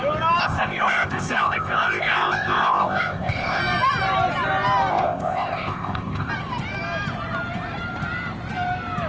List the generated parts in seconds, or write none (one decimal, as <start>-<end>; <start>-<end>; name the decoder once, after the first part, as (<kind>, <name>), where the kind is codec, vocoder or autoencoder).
0.4-3.6 (codec, ZipCodec); 4.9-6.3